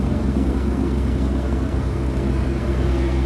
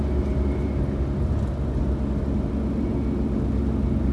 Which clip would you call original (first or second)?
second